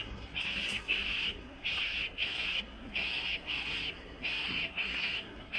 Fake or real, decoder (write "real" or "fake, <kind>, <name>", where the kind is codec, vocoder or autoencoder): fake, codec, SNAC